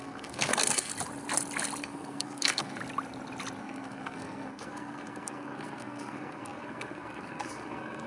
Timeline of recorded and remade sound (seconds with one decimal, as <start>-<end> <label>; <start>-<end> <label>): 0.0-0.9 remade; 0.9-1.8 recorded; 1.8-2.8 remade; 2.8-3.6 recorded; 3.6-8.1 remade